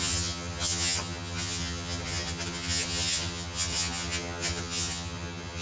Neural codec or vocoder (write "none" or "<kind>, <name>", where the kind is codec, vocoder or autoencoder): vocoder, HiFi-GAN